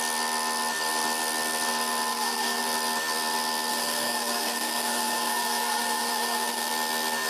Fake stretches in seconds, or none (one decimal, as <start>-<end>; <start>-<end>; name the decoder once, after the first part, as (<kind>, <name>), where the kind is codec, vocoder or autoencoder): 2.1-2.6 (codec, SNAC); 3.7-6.7